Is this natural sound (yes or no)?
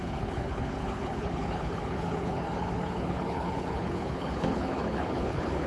no